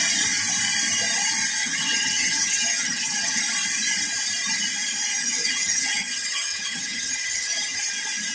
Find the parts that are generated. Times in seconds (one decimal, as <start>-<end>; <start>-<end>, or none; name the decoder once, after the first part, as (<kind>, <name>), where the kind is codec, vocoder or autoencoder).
1.6-3.4 (vocoder, HiFi-GAN); 5.1-7.8